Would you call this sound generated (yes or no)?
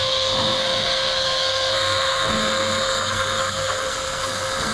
yes